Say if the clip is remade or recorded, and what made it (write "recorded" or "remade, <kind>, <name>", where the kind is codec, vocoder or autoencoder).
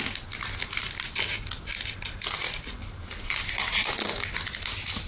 recorded